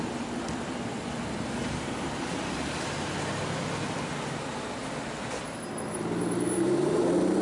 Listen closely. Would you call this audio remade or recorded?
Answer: recorded